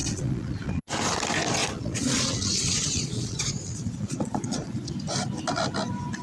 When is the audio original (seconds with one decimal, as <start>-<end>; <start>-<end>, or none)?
0.9-1.6; 4.9-6.2